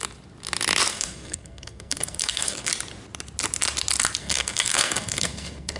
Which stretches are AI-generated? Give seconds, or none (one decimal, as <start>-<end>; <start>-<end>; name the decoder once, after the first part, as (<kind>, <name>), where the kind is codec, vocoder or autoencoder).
0.9-2.7 (codec, SNAC); 4.2-5.8